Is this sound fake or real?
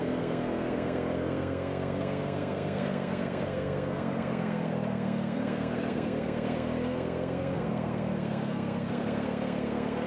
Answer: fake